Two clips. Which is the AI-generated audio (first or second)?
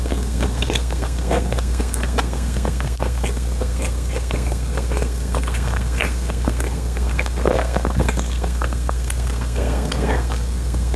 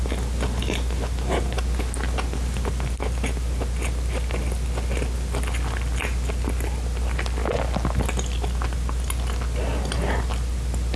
first